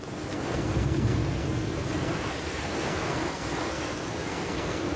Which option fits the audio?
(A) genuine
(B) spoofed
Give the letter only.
B